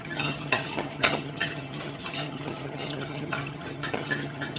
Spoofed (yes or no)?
yes